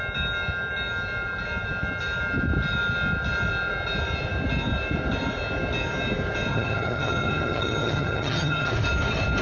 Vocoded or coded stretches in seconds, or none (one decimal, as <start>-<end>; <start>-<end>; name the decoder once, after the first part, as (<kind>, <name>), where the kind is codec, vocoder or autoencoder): 6.5-8.7 (vocoder, HiFi-GAN)